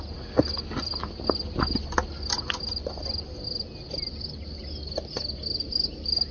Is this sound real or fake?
real